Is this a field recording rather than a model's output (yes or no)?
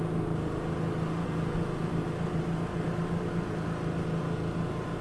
yes